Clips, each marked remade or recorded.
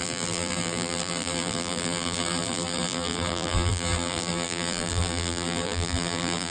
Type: remade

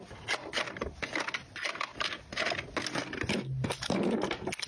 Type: recorded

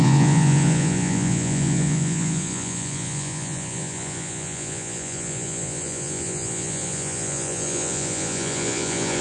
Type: remade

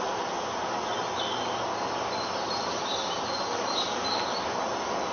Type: recorded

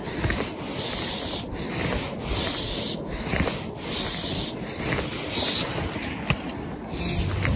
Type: recorded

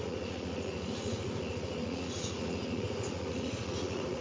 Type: remade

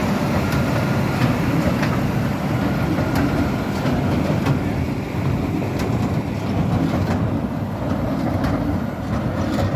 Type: recorded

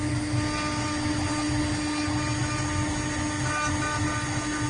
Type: recorded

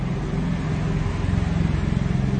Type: recorded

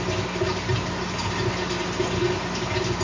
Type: recorded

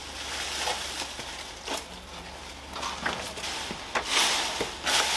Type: recorded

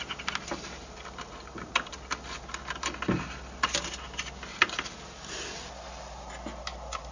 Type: recorded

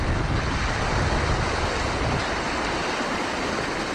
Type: remade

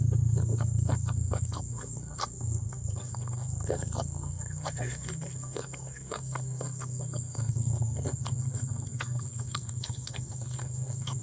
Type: remade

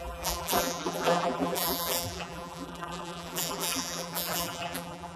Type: remade